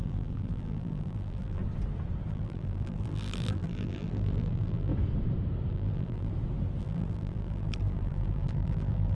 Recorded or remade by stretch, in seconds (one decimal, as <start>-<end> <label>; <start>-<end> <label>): 0.0-1.6 remade; 1.6-2.3 recorded; 2.3-4.9 remade; 4.9-5.7 recorded; 5.7-6.3 remade; 6.3-6.8 recorded; 6.8-9.1 remade